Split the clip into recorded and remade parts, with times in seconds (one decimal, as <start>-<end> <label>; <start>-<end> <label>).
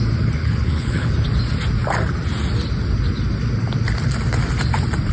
0.0-0.4 recorded; 0.4-1.1 remade; 1.1-5.1 recorded